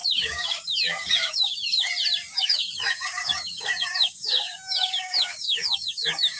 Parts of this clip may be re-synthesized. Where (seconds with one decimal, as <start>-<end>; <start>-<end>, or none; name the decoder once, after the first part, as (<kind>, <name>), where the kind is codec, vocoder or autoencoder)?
0.0-1.9 (codec, DAC); 2.3-6.4